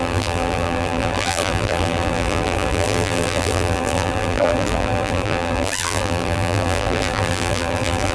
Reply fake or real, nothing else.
fake